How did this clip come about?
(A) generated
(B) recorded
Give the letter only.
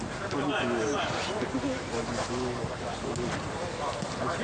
B